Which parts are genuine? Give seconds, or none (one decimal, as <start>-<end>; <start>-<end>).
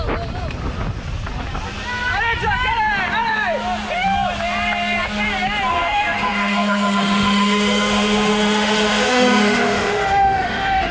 0.0-5.7